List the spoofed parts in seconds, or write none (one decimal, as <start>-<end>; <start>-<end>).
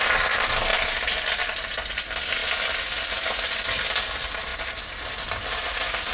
none